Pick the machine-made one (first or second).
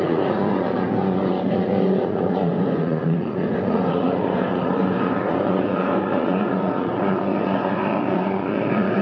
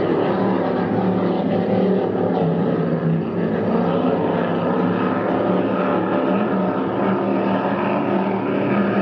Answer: first